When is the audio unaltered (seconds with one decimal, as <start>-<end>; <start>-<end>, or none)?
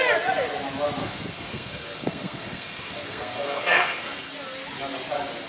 0.0-1.0; 4.3-5.5